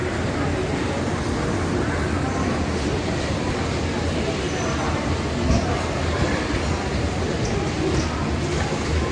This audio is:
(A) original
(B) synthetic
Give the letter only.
A